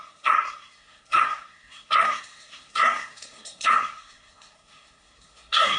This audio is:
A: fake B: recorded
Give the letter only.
A